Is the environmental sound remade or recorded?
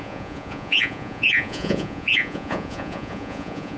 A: remade